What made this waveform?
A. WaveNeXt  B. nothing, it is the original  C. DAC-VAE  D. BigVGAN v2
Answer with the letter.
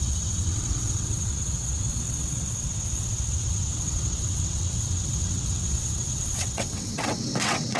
A